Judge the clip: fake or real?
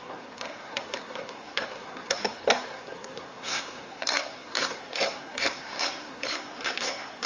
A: fake